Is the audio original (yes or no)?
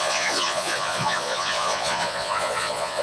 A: no